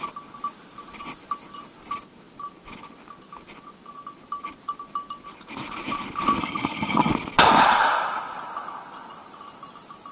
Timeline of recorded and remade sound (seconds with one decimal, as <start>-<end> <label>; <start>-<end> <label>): 0.0-6.4 recorded; 6.4-7.1 remade; 7.1-10.1 recorded